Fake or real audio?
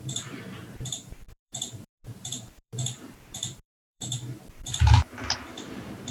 fake